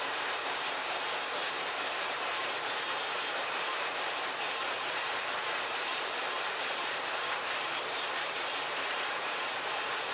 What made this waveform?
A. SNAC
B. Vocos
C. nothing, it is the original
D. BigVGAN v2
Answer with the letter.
D